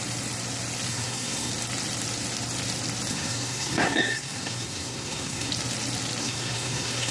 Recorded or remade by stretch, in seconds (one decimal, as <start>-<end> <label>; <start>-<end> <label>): 0.0-0.9 recorded; 0.9-1.5 remade; 1.5-3.1 recorded; 3.1-5.5 remade; 5.5-6.2 recorded; 6.2-7.1 remade